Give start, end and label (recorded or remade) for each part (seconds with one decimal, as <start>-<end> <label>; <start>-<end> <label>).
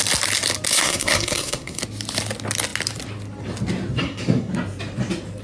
0.0-0.7 recorded; 0.7-1.8 remade; 1.8-4.0 recorded; 4.0-4.5 remade; 4.5-5.4 recorded